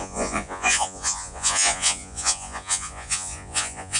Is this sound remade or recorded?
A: remade